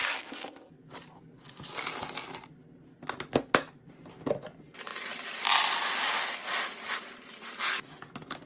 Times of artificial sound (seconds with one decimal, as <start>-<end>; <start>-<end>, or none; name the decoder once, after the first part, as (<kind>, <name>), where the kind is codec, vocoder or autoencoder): 0.0-1.8 (codec, DAC)